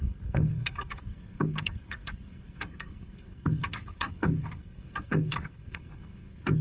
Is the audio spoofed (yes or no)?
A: yes